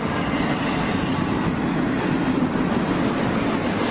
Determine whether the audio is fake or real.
real